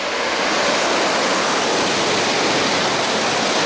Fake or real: real